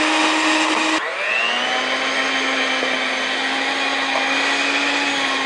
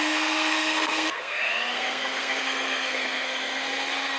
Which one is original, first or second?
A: first